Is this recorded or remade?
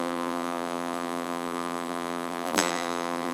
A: remade